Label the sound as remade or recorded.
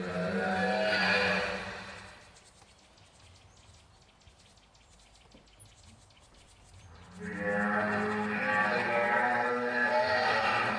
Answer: recorded